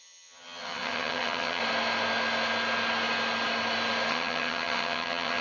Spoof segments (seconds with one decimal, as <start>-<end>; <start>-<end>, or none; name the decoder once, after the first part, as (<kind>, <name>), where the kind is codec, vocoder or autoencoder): 0.0-1.6 (vocoder, HiFi-GAN); 4.1-5.4